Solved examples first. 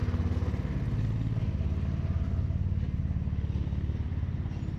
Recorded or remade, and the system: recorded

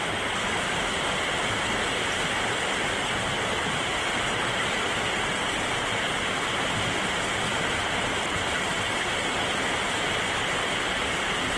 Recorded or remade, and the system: recorded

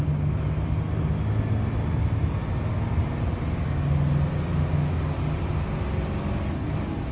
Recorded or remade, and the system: recorded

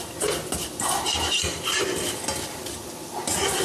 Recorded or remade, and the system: recorded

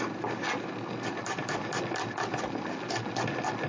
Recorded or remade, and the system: recorded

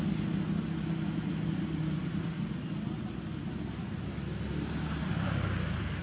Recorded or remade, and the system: recorded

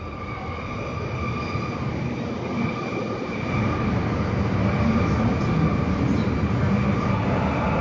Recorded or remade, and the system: recorded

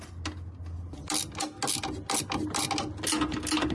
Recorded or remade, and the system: recorded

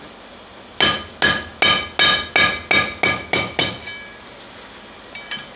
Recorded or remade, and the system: recorded